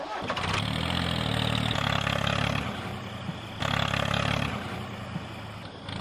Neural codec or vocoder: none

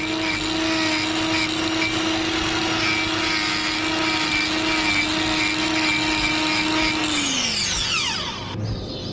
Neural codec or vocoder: none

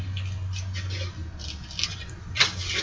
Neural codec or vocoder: none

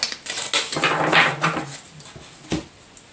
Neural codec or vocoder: none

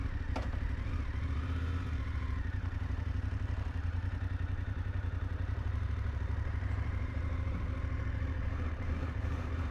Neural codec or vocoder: vocoder, BigVGAN v2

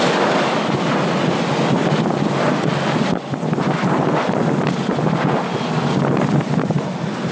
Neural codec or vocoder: none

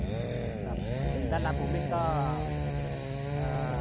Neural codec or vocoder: none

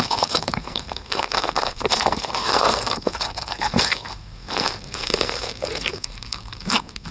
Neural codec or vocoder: codec, SNAC